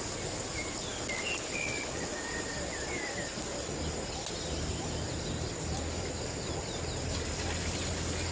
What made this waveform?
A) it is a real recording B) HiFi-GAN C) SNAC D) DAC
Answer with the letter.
A